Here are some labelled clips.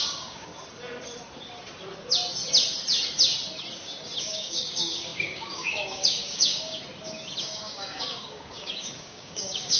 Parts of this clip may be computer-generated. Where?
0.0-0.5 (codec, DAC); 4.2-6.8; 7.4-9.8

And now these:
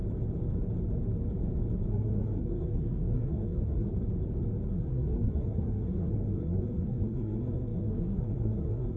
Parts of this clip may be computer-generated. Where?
1.9-3.9 (codec, SNAC); 4.7-9.0

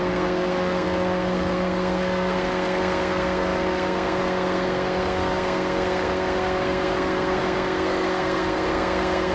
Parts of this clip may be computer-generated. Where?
0.0-9.3 (codec, SNAC)

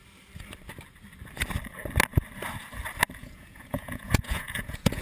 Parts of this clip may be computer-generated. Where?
3.2-5.0 (vocoder, Vocos)

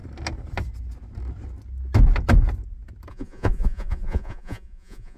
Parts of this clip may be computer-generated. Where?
3.1-5.2 (vocoder, Vocos)

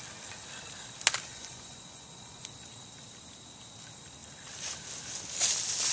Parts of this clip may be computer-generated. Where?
1.3-2.5 (vocoder, Vocos)

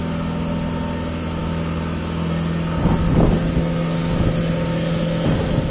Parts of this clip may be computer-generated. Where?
none

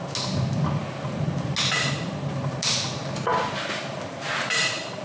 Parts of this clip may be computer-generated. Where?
none